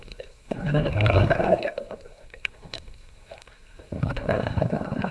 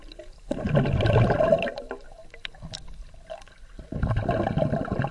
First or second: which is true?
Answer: second